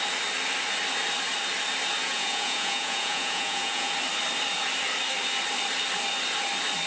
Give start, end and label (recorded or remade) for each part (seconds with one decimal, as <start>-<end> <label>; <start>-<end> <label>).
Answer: 0.0-2.0 recorded; 2.0-3.9 remade; 3.9-6.9 recorded